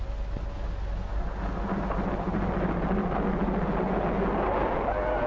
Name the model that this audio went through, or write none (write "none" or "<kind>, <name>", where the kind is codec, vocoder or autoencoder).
none